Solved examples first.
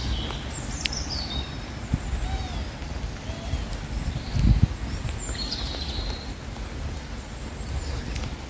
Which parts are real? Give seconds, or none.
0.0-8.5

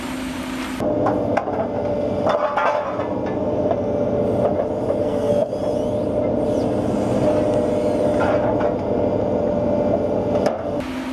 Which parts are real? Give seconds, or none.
0.0-5.0; 5.5-11.1

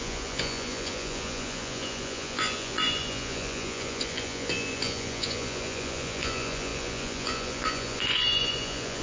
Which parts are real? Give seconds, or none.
none

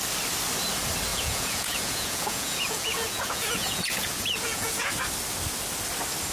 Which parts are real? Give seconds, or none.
0.0-1.1; 4.9-6.3

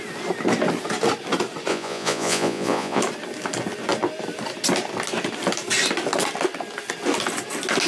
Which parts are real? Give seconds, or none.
0.0-1.7; 3.0-7.9